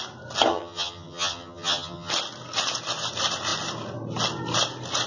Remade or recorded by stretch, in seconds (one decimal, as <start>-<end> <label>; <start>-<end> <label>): 0.0-0.5 recorded; 0.5-2.1 remade; 2.1-5.1 recorded